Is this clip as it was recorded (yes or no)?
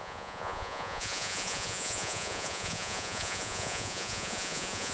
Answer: no